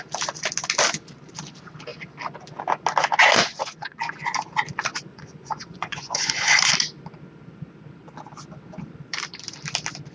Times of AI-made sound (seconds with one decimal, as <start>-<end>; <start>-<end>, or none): 3.4-4.0; 5.1-6.7